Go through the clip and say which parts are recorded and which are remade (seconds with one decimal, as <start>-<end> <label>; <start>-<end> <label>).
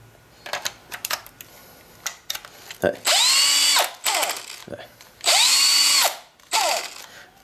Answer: 0.0-4.6 recorded; 4.6-6.8 remade; 6.8-7.4 recorded